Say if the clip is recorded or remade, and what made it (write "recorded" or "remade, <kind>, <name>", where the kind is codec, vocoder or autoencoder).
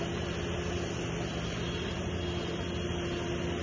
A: recorded